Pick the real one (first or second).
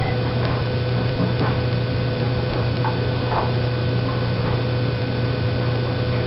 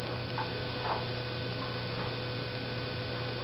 second